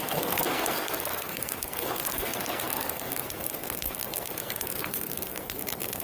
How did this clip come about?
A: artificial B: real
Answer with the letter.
A